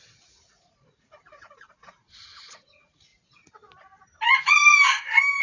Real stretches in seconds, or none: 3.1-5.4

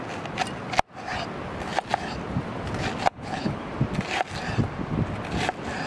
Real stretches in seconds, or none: 0.0-3.1; 3.7-5.9